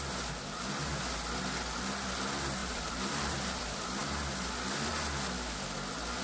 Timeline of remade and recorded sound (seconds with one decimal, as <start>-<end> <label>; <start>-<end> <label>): 0.0-2.6 recorded; 2.6-3.6 remade; 3.6-6.2 recorded

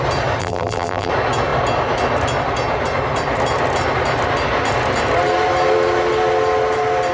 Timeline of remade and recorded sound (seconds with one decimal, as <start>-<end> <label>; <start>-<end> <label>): 0.0-0.4 recorded; 0.4-1.1 remade; 1.1-7.1 recorded

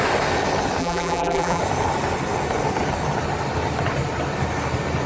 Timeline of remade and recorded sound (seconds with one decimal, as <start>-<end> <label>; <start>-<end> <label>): 0.0-0.8 recorded; 0.8-1.6 remade; 1.6-5.1 recorded

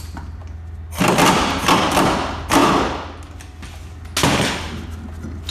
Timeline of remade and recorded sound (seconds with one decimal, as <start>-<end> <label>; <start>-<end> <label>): 0.0-5.5 recorded